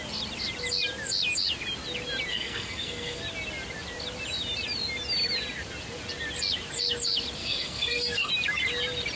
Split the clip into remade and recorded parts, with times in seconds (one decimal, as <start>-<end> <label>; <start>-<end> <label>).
0.0-2.3 recorded; 2.3-3.2 remade; 3.2-7.4 recorded; 7.4-8.3 remade; 8.3-9.2 recorded